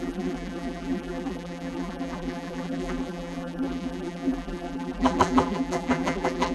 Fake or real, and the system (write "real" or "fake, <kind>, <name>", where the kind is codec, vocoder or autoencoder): fake, vocoder, BigVGAN v2